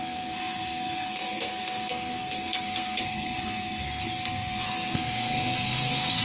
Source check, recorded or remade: remade